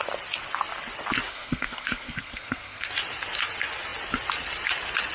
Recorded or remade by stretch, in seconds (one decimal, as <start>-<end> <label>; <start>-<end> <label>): 0.0-1.3 recorded; 1.3-2.9 remade; 2.9-5.1 recorded